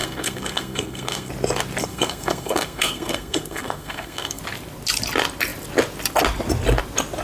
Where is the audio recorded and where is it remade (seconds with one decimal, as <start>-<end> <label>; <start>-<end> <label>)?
0.0-1.3 remade; 1.3-1.8 recorded; 1.8-4.4 remade; 4.4-7.2 recorded